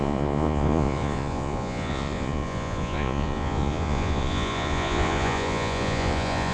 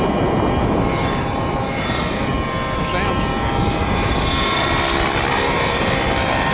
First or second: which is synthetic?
first